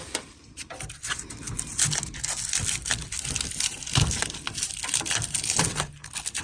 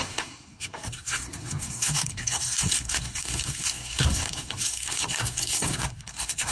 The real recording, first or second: first